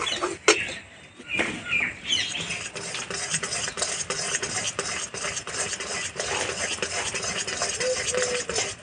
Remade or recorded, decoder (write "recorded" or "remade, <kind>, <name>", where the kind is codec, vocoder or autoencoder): recorded